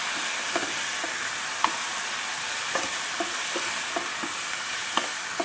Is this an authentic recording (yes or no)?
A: yes